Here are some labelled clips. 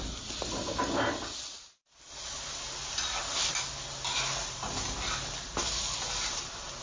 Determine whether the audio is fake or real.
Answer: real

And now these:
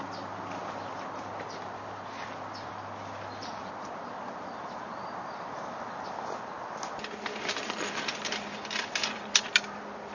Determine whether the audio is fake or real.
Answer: real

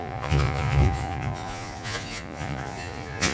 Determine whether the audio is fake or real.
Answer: fake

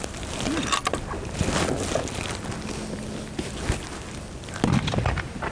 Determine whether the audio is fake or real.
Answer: real